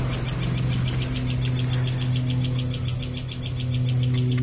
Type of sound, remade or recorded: recorded